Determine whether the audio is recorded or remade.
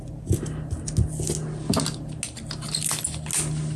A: recorded